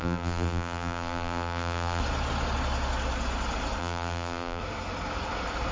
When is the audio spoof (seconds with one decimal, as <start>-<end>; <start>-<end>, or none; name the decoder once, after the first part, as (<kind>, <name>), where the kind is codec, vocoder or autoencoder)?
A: 0.0-2.0 (vocoder, BigVGAN v2); 3.8-4.6